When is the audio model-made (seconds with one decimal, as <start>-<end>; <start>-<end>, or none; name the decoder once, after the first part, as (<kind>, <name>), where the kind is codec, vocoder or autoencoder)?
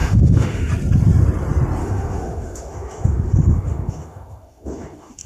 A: 0.0-0.7 (autoencoder, DAC-VAE); 1.8-5.3